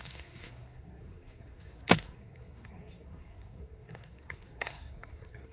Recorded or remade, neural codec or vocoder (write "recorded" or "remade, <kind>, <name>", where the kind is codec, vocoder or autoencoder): remade, codec, SNAC